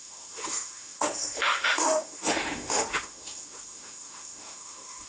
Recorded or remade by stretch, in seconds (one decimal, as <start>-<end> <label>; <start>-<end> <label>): 0.0-5.1 remade